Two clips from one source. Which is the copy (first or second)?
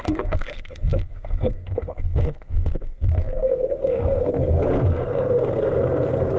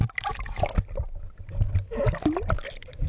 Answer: first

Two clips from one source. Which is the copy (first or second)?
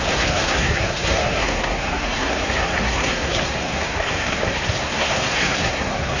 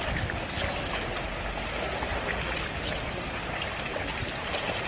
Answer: first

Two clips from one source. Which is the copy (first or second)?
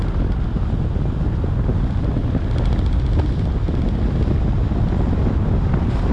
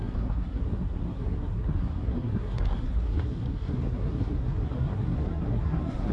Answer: second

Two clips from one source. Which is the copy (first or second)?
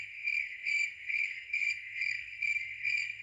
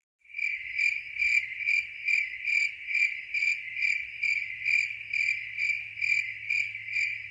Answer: first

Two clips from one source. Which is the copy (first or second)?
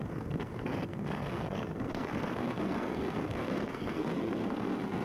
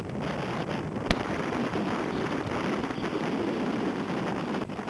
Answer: first